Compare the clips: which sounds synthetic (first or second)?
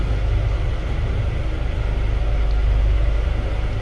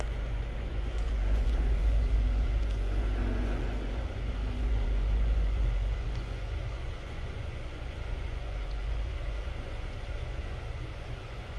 second